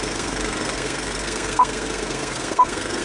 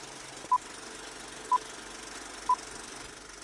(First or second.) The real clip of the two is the second